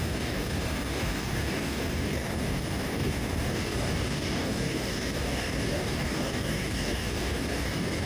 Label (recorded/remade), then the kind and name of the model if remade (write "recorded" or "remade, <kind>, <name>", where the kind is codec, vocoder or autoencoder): remade, codec, DAC